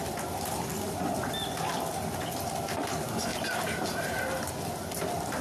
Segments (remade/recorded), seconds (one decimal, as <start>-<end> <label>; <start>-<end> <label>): 0.0-3.3 recorded; 3.3-4.5 remade; 4.5-5.4 recorded